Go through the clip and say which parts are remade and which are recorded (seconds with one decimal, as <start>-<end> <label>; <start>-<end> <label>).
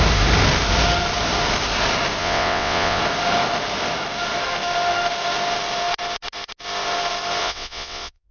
0.0-2.2 recorded; 2.2-3.0 remade; 3.0-7.4 recorded; 7.4-8.3 remade